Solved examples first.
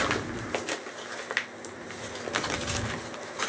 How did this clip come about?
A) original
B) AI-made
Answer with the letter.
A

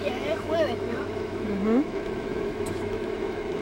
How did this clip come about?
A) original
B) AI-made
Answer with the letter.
B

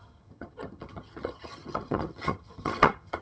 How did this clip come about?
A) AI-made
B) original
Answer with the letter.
A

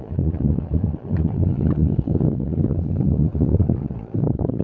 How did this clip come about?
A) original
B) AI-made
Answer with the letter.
B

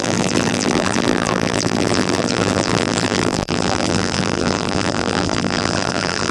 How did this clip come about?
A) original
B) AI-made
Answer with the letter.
B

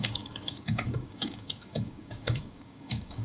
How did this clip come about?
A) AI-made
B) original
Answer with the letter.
A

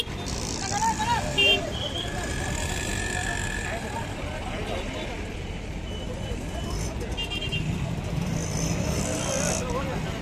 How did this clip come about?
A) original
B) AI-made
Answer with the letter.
A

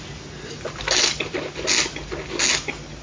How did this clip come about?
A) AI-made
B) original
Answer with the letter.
B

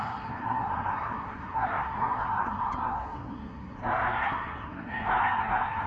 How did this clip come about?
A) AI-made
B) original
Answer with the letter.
A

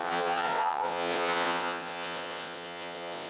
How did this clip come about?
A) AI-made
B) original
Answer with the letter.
A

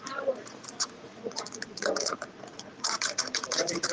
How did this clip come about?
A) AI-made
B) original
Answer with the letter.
A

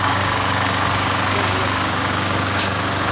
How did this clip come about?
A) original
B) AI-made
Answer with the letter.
B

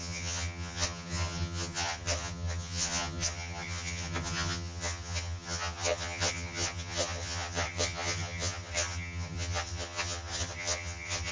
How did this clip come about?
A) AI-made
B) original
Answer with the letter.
A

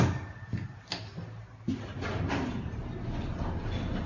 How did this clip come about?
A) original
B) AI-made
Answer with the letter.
A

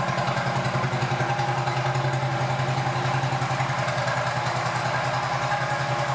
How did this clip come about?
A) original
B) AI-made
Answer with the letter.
A